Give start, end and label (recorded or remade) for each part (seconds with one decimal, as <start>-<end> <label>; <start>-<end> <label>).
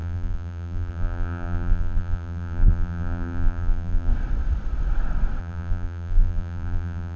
0.0-4.1 remade; 4.1-5.4 recorded; 5.4-7.2 remade